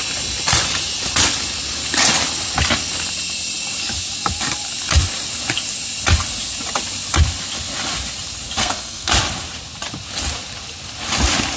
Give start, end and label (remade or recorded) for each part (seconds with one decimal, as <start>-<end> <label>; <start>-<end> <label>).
0.0-8.6 recorded; 8.6-9.1 remade; 9.1-11.6 recorded